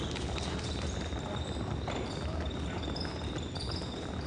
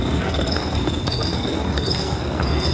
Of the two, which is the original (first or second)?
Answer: first